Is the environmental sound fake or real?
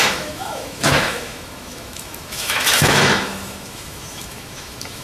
fake